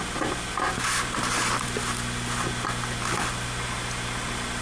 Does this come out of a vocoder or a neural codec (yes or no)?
no